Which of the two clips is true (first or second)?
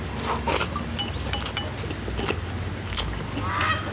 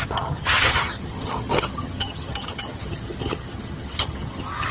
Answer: first